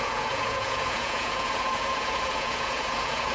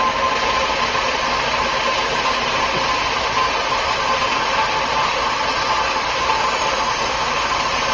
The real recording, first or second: second